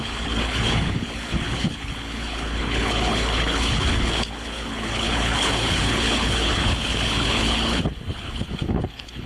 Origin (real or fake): fake